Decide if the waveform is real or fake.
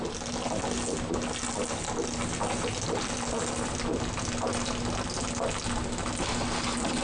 real